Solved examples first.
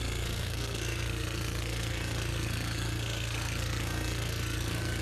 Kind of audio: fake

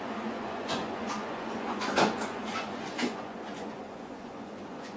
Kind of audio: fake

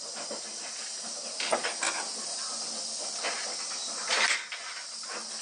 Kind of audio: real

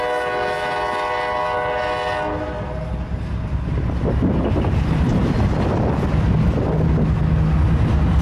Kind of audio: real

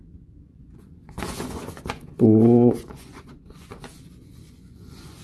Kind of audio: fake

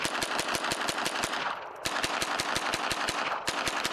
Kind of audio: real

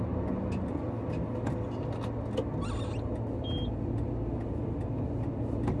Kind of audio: real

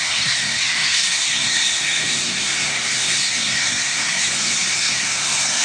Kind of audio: fake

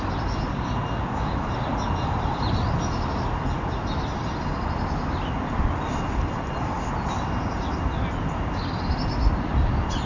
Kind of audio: real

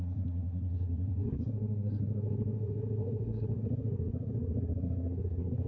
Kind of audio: fake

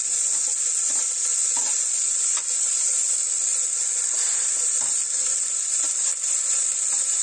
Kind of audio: real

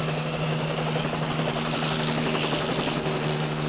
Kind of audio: real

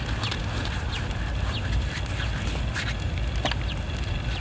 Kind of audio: real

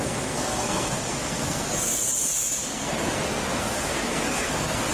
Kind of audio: fake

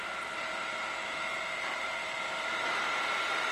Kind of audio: fake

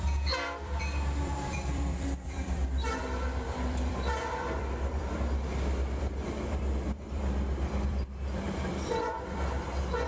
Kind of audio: fake